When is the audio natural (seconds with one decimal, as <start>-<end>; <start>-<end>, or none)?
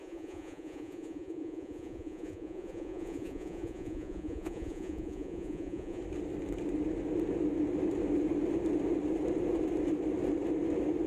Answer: 6.0-11.1